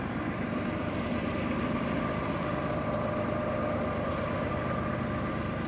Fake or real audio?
fake